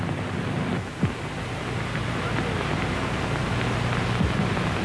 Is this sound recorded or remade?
recorded